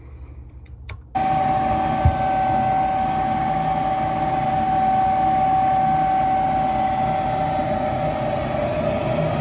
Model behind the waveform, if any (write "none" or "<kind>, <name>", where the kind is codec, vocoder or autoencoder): none